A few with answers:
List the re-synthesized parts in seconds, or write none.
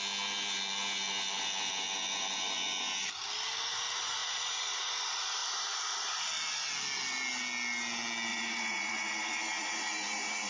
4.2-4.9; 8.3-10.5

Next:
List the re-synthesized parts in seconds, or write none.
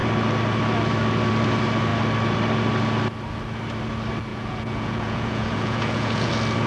4.3-6.3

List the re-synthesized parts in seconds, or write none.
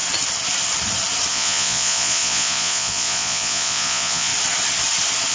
1.3-4.3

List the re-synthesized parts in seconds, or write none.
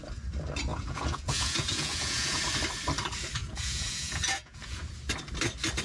0.7-2.4; 3.4-4.8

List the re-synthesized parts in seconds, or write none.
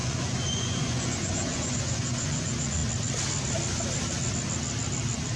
0.0-2.8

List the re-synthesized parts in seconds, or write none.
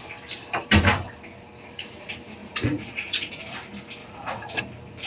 2.4-3.3; 4.0-4.6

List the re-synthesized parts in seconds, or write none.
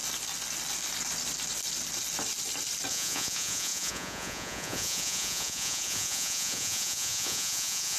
2.9-8.0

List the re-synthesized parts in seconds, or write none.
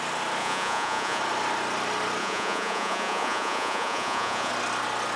0.4-1.2; 2.2-4.5